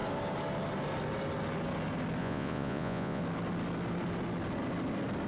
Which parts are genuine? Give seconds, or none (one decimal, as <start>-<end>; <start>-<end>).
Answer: 0.0-2.2; 3.2-5.3